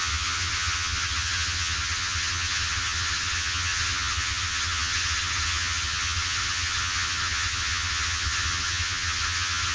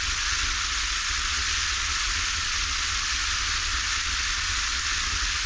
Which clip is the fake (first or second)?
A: first